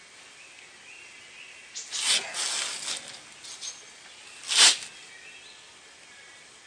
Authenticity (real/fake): real